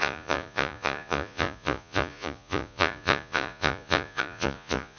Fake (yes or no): yes